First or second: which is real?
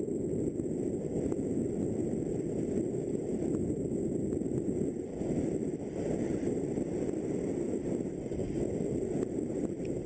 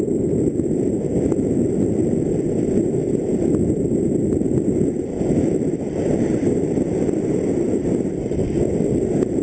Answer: first